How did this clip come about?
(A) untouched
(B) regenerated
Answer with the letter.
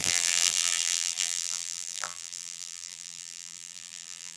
B